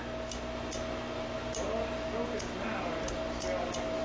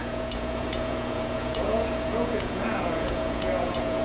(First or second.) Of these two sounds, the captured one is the first